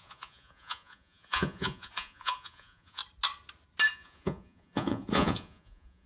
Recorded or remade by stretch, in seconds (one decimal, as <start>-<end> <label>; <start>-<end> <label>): 0.0-3.0 remade; 3.0-3.9 recorded; 3.9-6.1 remade